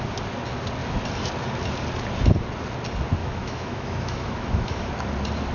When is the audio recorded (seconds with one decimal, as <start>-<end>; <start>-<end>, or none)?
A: 0.0-3.2; 4.9-5.5